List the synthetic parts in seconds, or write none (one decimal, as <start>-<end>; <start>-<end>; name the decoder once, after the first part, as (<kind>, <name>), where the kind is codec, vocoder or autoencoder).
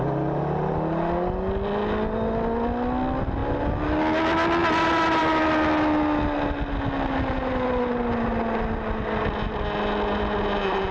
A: none